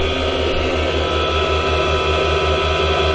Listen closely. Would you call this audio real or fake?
real